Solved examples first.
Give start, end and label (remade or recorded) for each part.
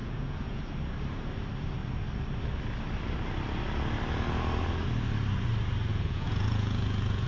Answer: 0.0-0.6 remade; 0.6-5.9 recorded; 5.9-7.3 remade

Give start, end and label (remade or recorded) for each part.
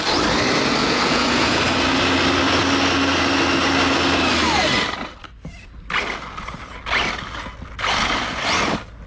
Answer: 0.0-0.8 recorded; 0.8-1.6 remade; 1.6-9.1 recorded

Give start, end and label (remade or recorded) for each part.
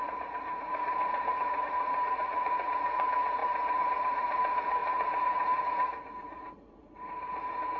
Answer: 0.0-7.8 remade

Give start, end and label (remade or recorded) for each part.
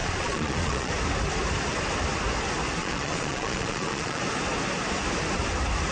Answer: 0.0-0.9 remade; 0.9-2.8 recorded; 2.8-4.2 remade; 4.2-5.9 recorded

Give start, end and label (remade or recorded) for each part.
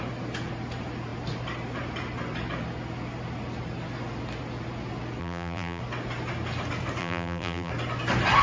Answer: 0.0-5.2 recorded; 5.2-5.8 remade; 5.8-7.0 recorded; 7.0-7.7 remade; 7.7-8.4 recorded